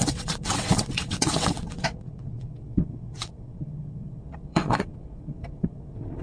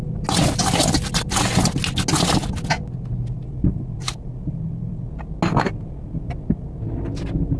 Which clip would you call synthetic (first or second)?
first